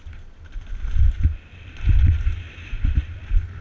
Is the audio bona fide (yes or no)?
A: yes